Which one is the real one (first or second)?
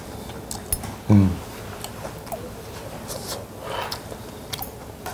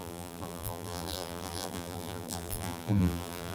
first